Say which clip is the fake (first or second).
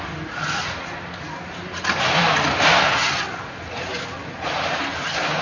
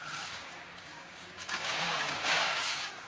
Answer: second